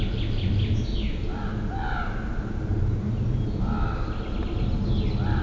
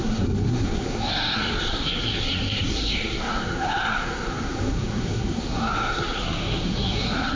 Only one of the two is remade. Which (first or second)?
second